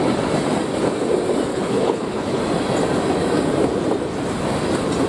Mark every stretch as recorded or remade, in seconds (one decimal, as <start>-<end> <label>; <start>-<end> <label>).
0.0-1.5 recorded; 1.5-2.4 remade; 2.4-5.1 recorded